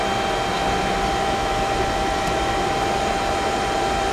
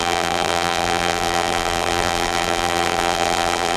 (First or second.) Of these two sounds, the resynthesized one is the second